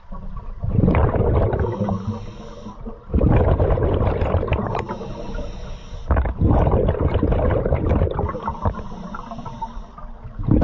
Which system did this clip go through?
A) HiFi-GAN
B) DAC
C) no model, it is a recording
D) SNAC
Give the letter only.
C